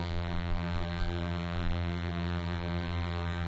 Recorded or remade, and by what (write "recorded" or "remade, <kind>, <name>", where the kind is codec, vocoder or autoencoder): remade, vocoder, BigVGAN v2